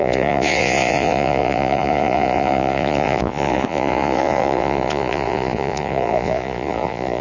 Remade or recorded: remade